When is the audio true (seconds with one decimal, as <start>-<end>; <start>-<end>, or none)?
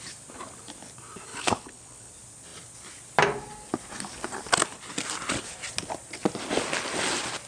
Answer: 0.0-1.3; 2.1-7.5